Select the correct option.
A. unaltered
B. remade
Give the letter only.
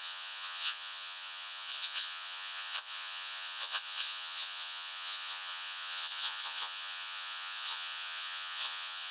B